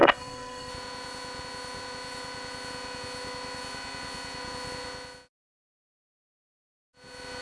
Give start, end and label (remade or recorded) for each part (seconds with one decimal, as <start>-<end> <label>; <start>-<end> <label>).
0.0-0.7 remade; 0.7-7.4 recorded

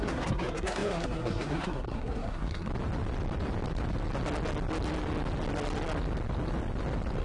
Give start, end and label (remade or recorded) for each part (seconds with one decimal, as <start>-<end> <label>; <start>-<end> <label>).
0.0-2.7 remade; 2.7-7.2 recorded